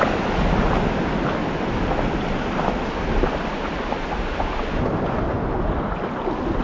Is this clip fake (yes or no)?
no